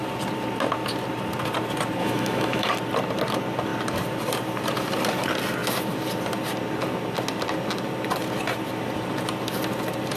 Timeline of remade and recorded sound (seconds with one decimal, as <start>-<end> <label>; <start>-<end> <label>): 0.0-2.0 recorded; 2.0-2.7 remade; 2.7-10.2 recorded